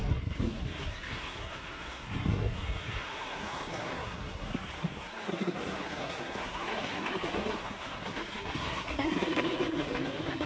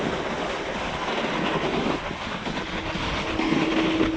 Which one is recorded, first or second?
second